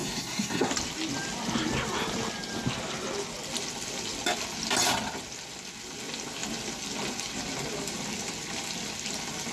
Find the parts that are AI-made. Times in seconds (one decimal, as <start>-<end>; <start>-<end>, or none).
0.0-0.7